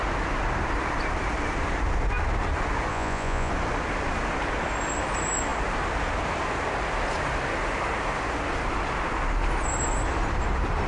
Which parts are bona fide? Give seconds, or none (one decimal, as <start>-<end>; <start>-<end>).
0.0-2.9; 3.5-10.9